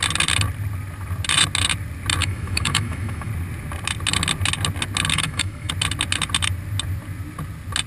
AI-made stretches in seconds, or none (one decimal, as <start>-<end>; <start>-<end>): 2.2-3.3; 5.1-5.7